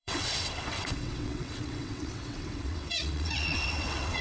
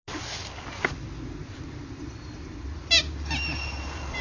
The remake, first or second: first